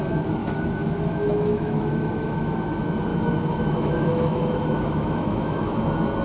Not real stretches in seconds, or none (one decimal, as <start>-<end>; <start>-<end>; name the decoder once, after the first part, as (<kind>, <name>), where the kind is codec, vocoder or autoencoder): 0.4-2.6 (autoencoder, DAC-VAE); 3.1-5.8